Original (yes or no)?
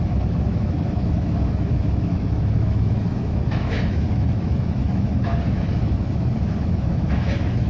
no